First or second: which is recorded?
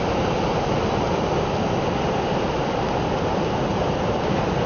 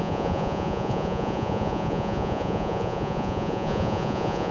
first